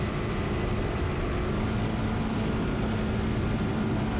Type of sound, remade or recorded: recorded